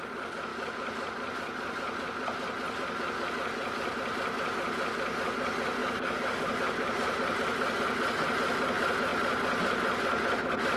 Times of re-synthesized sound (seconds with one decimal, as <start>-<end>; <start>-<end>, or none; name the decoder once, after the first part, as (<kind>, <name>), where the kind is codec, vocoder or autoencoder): 5.8-6.6 (codec, DAC)